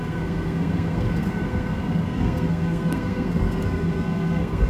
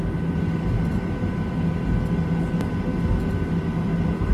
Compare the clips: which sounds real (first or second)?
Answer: second